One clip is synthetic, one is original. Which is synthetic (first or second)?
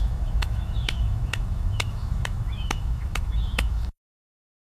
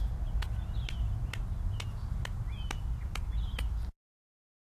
first